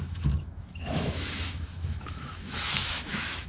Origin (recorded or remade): remade